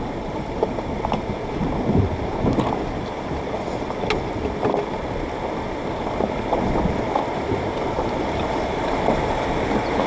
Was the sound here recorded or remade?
recorded